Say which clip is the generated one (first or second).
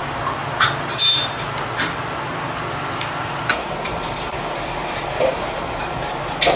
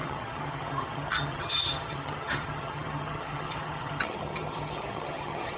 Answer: second